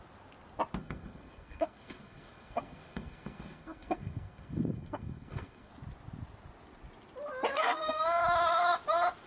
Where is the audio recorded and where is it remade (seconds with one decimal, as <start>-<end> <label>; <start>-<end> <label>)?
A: 0.0-0.8 recorded; 0.8-5.7 remade; 5.7-7.5 recorded; 7.5-8.2 remade; 8.2-9.3 recorded